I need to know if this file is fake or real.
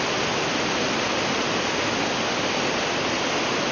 real